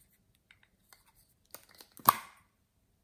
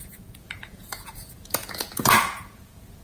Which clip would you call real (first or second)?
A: first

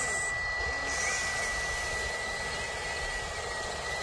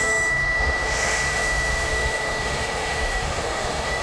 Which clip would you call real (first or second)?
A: first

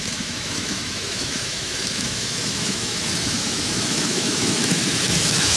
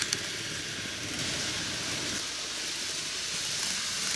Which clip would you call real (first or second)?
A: second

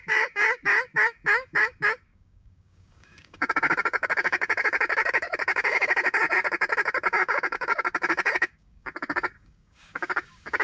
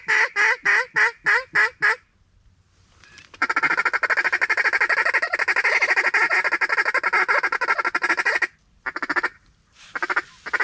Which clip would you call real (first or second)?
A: second